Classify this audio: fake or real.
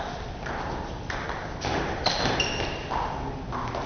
real